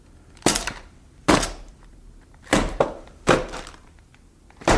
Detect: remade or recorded recorded